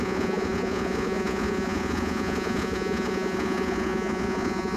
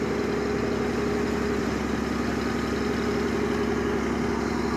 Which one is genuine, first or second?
second